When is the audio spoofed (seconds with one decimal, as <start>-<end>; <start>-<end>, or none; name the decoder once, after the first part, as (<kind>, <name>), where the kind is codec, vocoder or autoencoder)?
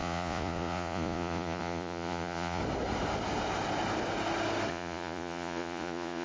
0.0-2.6 (vocoder, Vocos); 4.7-6.2